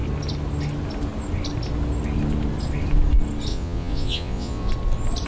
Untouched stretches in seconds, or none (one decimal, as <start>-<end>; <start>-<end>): 0.0-3.5; 4.7-5.3